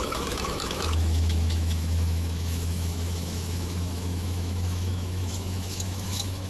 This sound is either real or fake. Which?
fake